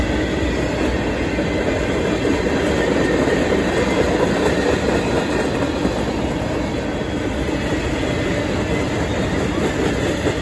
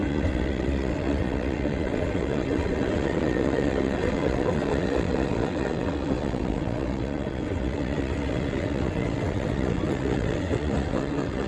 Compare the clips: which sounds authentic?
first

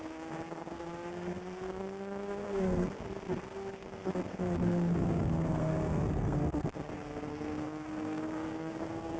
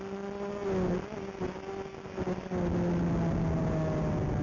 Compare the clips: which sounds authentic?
second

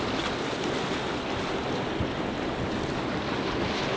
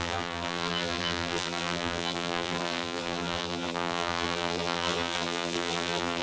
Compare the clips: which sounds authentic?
first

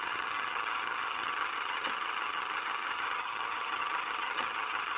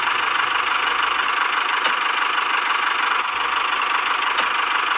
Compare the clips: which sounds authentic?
second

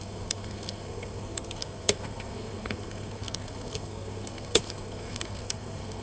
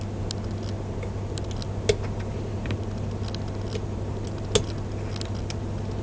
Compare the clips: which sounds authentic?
second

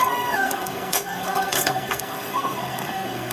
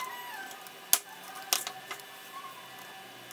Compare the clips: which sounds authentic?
second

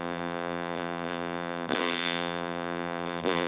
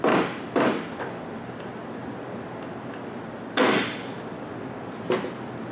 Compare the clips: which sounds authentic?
second